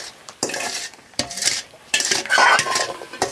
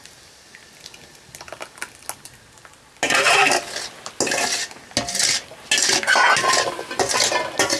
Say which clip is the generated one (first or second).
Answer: first